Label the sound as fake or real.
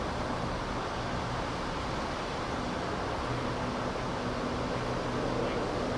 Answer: real